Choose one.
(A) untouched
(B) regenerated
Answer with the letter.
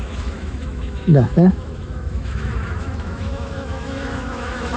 B